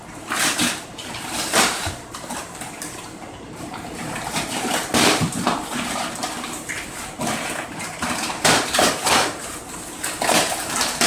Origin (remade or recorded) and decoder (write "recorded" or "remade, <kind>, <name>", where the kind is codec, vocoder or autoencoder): remade, vocoder, BigVGAN v2